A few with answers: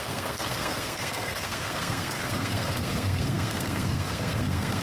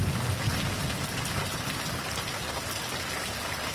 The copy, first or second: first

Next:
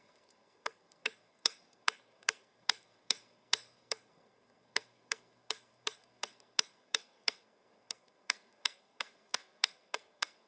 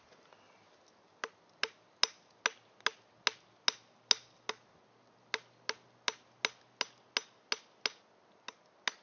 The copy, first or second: first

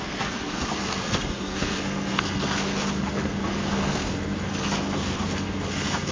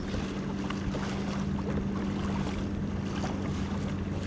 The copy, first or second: first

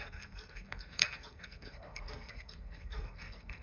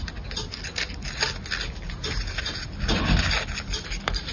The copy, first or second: first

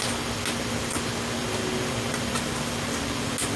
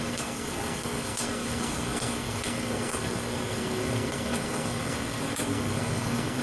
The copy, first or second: second